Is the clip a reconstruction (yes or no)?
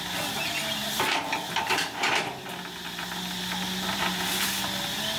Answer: no